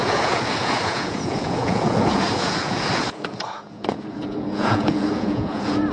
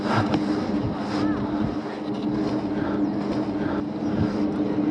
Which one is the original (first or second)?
second